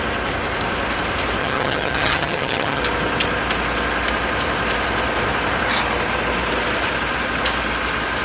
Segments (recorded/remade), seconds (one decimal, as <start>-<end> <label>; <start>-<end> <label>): 0.0-1.4 recorded; 1.4-2.8 remade; 2.8-8.2 recorded